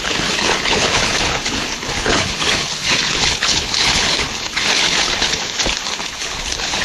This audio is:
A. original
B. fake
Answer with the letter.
B